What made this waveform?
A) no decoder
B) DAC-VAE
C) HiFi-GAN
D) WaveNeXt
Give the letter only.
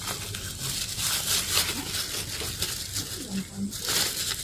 A